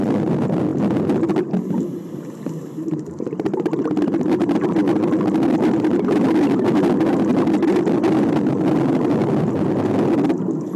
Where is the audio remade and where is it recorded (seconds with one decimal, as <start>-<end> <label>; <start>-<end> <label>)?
0.0-10.8 recorded